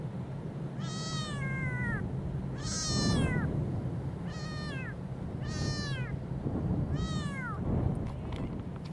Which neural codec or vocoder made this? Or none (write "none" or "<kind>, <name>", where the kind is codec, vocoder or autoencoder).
none